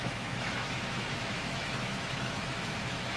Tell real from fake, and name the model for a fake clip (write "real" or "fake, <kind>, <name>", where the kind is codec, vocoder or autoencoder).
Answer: fake, autoencoder, DAC-VAE